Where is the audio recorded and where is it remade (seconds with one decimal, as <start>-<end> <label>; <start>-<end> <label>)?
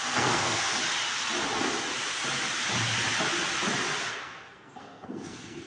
0.0-0.8 remade; 0.8-4.1 recorded; 4.1-5.7 remade